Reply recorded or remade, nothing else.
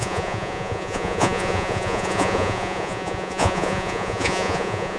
remade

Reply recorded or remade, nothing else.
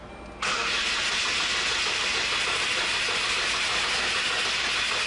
recorded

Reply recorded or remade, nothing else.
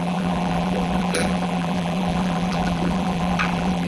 remade